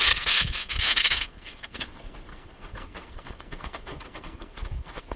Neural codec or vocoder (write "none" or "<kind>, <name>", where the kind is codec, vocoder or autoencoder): codec, SNAC